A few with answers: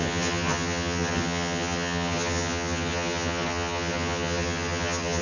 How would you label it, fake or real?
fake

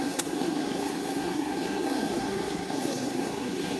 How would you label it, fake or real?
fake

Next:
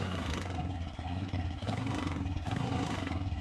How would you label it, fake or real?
fake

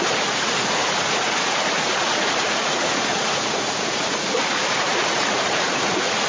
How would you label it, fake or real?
fake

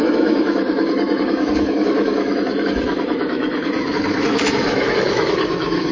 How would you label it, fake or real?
fake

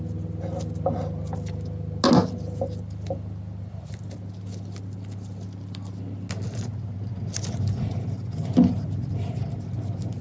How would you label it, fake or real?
real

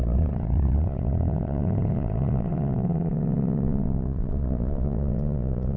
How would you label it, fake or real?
fake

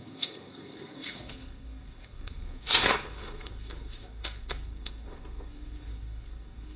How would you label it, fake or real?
fake